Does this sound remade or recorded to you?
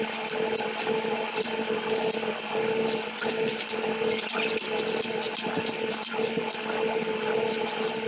recorded